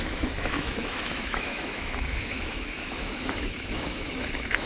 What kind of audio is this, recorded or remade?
remade